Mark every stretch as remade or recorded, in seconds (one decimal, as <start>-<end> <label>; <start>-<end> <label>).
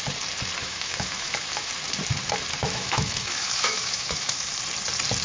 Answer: 0.0-0.6 recorded; 0.6-1.7 remade; 1.7-2.6 recorded; 2.6-4.5 remade; 4.5-5.2 recorded